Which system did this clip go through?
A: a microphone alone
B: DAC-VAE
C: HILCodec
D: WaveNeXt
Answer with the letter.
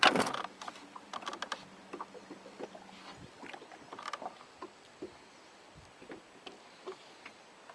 A